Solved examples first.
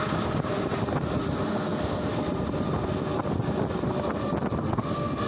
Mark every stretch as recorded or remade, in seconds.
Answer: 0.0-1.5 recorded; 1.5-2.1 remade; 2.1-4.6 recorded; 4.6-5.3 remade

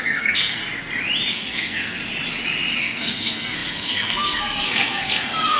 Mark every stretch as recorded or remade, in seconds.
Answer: 0.0-0.6 remade; 0.6-1.3 recorded; 1.3-2.0 remade; 2.0-2.8 recorded; 2.8-5.6 remade

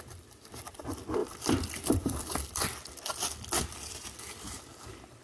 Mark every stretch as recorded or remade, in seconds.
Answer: 0.0-1.2 recorded; 1.2-2.6 remade; 2.6-5.2 recorded

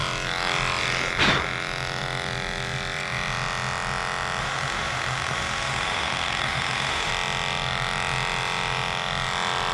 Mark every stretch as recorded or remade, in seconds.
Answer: 0.0-4.4 recorded; 4.4-7.1 remade; 7.1-9.7 recorded